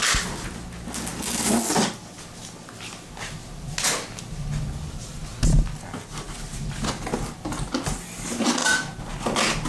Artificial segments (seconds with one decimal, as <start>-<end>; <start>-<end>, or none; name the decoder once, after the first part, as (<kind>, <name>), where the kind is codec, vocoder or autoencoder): 5.3-5.8 (vocoder, BigVGAN v2)